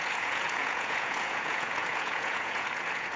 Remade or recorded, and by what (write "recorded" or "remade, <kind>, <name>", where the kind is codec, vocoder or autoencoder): remade, vocoder, Vocos